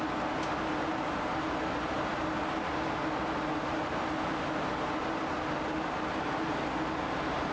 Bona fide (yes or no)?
yes